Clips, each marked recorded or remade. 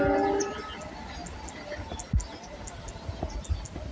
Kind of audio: recorded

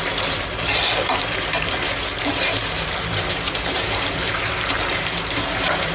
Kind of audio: remade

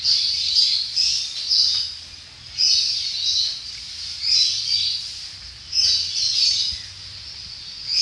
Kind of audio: recorded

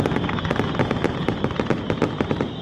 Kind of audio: remade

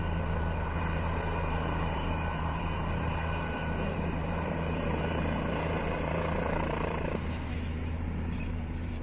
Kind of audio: remade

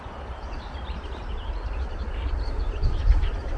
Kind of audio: remade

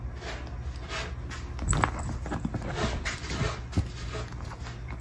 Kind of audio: recorded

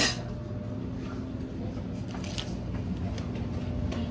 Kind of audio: recorded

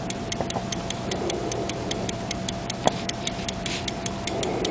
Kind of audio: remade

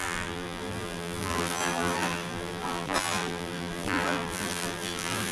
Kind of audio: remade